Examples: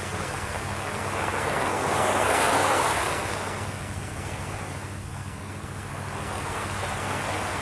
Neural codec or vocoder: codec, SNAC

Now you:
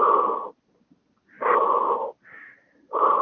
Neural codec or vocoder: none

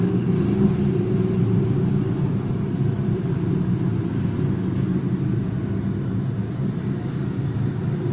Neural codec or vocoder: none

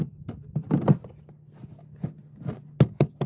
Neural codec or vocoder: none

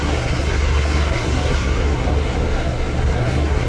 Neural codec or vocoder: codec, SNAC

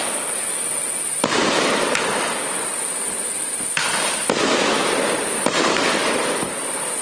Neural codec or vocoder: none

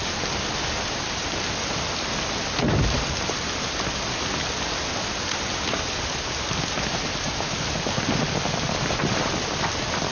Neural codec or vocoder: none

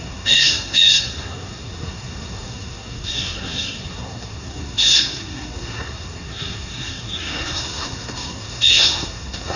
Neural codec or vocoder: codec, SNAC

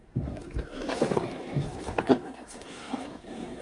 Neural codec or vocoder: codec, SNAC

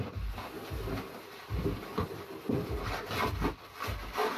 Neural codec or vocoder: none